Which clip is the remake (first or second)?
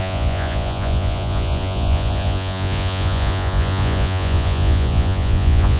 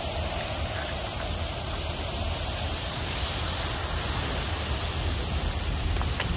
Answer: first